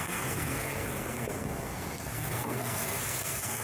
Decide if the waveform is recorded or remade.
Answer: remade